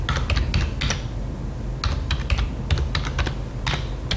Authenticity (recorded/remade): recorded